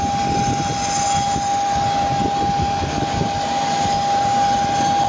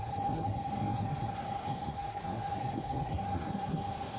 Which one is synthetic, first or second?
second